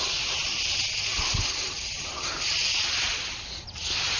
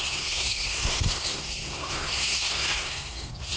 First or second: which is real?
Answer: first